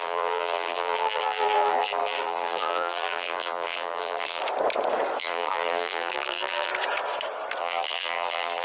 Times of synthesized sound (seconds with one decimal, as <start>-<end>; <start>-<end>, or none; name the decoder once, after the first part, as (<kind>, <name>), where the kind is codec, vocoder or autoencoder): 0.0-4.4 (vocoder, BigVGAN v2); 5.2-6.7; 7.6-8.6